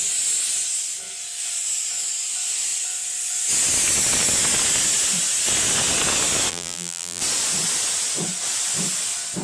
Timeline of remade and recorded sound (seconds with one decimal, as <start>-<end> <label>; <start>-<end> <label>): 0.0-6.5 recorded; 6.5-7.2 remade; 7.2-9.4 recorded